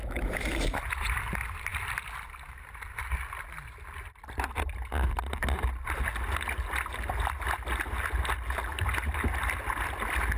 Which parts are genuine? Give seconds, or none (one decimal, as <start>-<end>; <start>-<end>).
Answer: 0.8-10.4